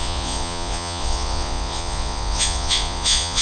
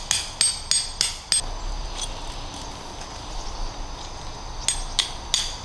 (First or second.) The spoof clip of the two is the first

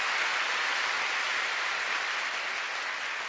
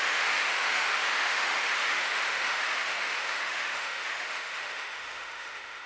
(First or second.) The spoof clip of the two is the second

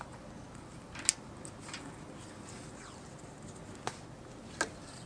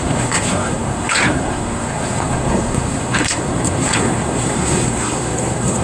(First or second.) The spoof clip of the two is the second